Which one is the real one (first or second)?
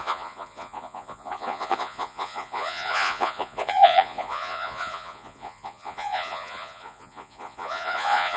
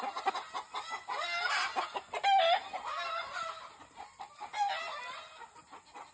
second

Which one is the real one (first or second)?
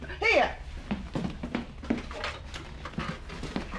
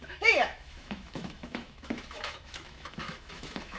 first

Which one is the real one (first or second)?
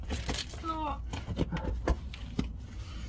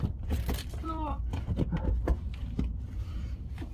first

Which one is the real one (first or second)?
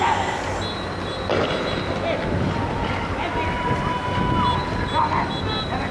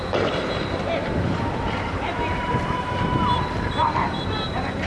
first